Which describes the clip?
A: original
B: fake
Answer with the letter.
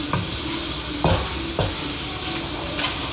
A